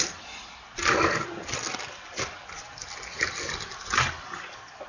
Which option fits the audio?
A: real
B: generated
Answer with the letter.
A